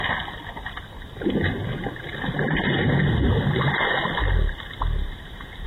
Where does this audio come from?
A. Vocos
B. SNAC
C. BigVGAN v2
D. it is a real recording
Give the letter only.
D